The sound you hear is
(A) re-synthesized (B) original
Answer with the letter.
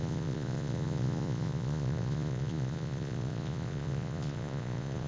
A